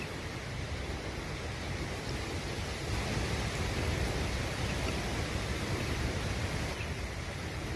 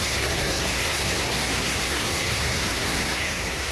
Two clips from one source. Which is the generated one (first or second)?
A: second